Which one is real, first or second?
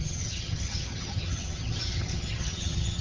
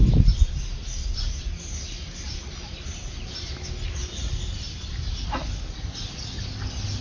second